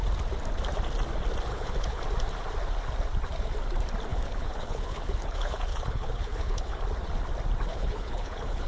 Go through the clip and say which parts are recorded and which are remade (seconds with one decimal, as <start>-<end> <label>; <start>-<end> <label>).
0.0-1.5 recorded; 1.5-2.0 remade; 2.0-4.1 recorded; 4.1-6.8 remade; 6.8-7.7 recorded; 7.7-8.7 remade